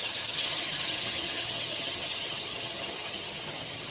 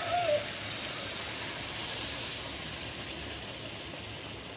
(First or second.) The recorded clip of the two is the second